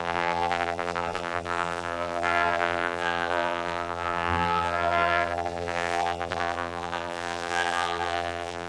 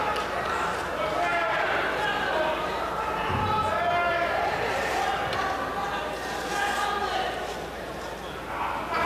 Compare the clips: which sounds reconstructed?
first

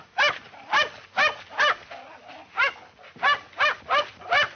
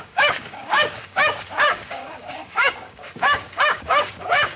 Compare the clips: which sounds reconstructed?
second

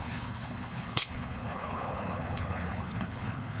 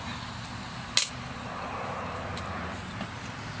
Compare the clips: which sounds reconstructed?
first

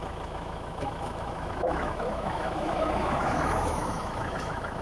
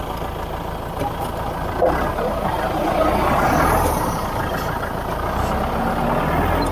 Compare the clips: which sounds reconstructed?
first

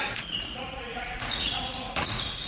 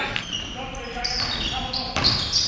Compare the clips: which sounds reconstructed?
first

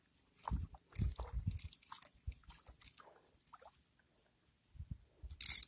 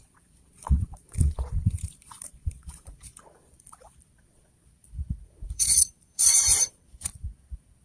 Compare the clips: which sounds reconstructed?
second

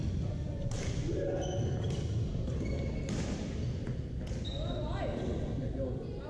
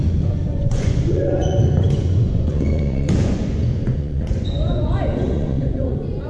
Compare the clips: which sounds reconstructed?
second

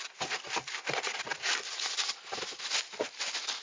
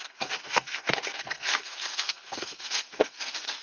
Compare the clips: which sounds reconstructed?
second